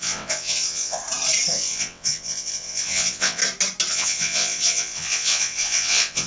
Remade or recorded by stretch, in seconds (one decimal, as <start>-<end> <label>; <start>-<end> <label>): 0.0-1.0 remade; 1.0-1.5 recorded; 1.5-3.4 remade; 3.4-3.9 recorded; 3.9-6.3 remade